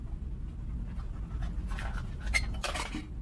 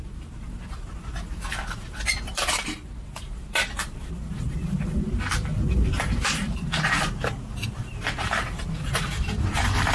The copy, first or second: second